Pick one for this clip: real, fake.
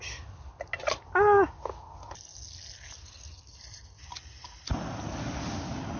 real